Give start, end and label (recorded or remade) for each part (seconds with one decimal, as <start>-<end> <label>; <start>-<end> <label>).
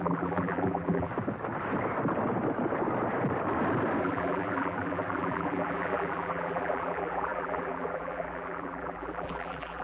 0.0-1.1 remade; 1.1-4.0 recorded; 4.0-9.8 remade